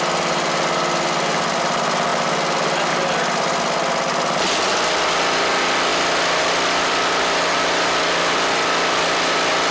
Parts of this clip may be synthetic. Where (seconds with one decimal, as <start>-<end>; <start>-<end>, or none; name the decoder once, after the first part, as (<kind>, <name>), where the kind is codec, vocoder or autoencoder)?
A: none